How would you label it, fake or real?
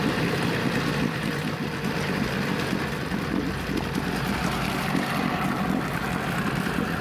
real